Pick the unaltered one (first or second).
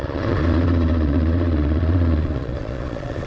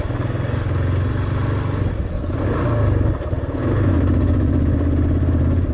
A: second